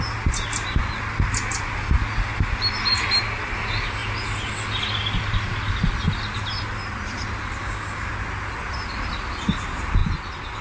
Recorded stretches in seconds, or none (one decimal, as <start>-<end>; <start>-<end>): 0.0-7.6; 8.1-10.6